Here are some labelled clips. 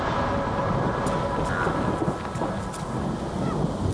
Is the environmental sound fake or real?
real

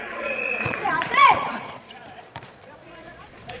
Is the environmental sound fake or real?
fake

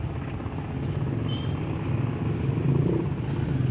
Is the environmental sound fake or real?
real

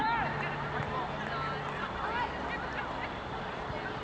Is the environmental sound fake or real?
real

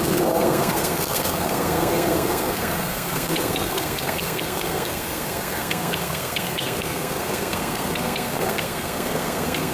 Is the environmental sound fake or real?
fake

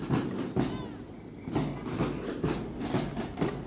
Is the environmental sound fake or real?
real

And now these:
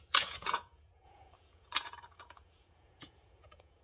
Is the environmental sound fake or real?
fake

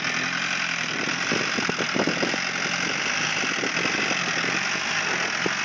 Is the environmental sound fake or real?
real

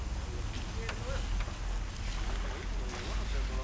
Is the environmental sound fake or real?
real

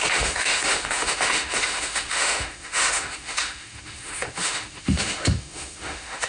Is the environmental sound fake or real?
fake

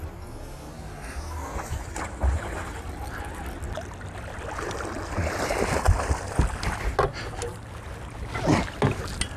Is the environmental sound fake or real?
real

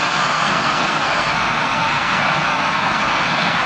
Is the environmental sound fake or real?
fake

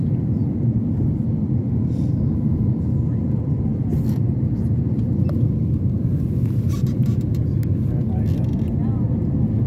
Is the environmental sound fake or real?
real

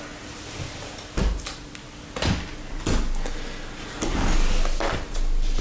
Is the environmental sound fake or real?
real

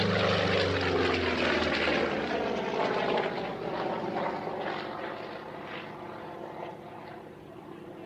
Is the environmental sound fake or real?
real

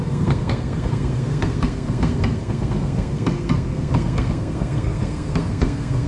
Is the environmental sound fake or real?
fake